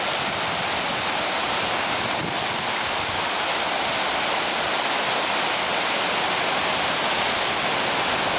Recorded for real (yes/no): yes